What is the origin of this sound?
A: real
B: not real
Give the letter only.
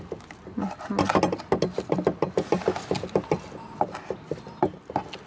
A